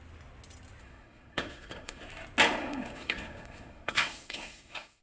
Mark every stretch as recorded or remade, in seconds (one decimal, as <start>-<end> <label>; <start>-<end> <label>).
0.0-0.8 recorded; 0.8-2.0 remade; 2.0-2.6 recorded; 2.6-5.0 remade